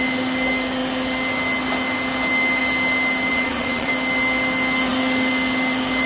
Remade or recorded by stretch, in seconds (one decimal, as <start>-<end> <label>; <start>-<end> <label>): 0.0-3.3 recorded; 3.3-3.9 remade; 3.9-6.1 recorded